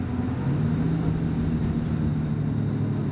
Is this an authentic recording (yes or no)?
yes